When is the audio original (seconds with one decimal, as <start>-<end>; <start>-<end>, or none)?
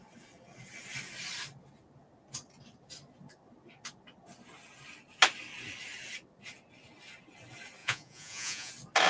0.0-7.8; 8.7-9.1